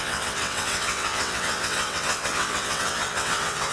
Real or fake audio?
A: fake